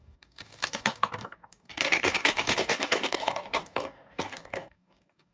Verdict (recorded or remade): remade